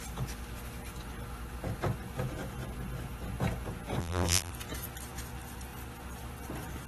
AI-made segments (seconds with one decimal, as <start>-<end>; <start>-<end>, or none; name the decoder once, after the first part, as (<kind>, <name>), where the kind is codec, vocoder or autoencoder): 4.0-4.5 (vocoder, BigVGAN v2)